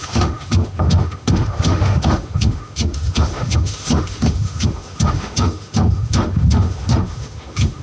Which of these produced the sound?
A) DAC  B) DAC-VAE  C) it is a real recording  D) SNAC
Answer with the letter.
B